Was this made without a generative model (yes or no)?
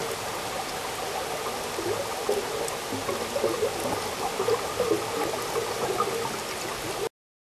yes